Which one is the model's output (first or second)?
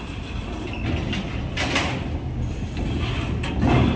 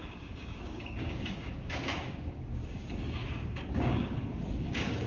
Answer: second